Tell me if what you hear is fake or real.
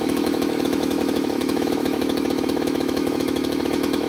fake